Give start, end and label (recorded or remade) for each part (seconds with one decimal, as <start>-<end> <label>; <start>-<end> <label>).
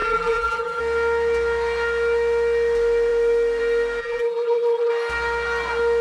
0.0-0.8 remade; 0.8-4.0 recorded; 4.0-4.9 remade; 4.9-6.0 recorded